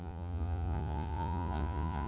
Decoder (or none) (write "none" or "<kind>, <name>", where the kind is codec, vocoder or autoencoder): vocoder, Vocos